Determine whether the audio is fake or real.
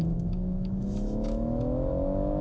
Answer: fake